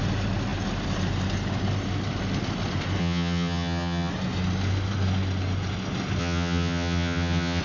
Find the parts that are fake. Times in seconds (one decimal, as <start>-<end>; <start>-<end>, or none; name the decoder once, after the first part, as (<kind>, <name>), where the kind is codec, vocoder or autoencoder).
3.0-4.1 (vocoder, HiFi-GAN); 6.2-7.6